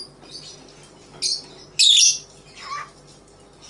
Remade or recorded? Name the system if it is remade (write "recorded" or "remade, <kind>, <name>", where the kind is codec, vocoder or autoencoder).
recorded